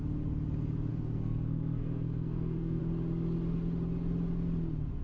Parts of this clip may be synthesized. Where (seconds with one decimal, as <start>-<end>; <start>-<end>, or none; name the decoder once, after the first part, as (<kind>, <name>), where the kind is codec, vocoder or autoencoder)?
0.9-2.8 (codec, SNAC)